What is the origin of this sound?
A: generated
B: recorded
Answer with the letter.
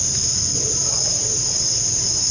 A